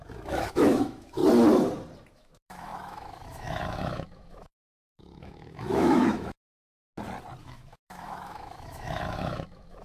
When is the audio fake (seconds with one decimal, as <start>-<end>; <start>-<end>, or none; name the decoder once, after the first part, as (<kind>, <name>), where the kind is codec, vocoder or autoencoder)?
0.0-1.2 (autoencoder, DAC-VAE); 2.1-6.8; 7.4-9.8